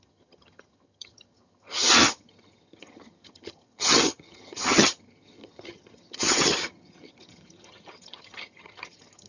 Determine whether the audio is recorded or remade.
remade